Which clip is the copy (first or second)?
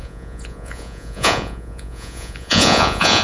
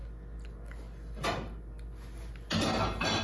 first